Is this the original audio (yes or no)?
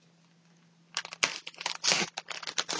yes